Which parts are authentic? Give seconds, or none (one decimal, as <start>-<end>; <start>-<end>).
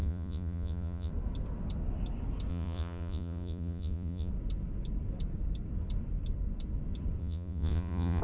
1.1-2.5; 4.3-7.2